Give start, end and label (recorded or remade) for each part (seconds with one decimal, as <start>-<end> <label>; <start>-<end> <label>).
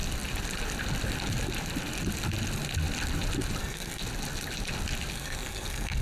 0.0-3.6 recorded; 3.6-4.0 remade; 4.0-5.1 recorded; 5.1-6.0 remade